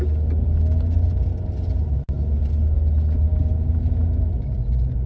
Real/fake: real